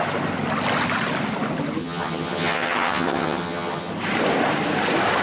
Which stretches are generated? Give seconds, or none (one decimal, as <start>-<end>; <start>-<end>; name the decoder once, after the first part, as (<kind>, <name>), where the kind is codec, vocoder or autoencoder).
1.8-3.9 (vocoder, HiFi-GAN)